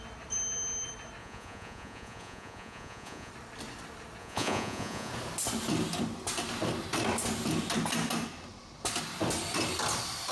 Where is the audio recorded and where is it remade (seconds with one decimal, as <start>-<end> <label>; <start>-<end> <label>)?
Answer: 0.0-1.2 recorded; 1.2-3.3 remade; 3.3-4.2 recorded; 4.2-5.1 remade; 5.1-10.3 recorded